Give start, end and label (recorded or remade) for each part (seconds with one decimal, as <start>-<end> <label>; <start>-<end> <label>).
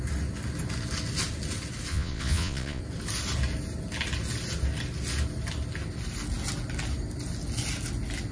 0.0-1.9 recorded; 1.9-2.8 remade; 2.8-8.3 recorded